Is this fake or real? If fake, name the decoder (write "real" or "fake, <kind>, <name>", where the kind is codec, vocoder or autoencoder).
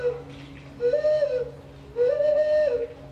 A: real